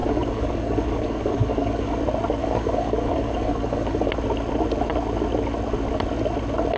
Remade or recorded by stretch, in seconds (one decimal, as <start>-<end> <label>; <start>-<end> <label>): 0.0-2.0 remade; 2.0-2.4 recorded; 2.4-4.1 remade; 4.1-6.8 recorded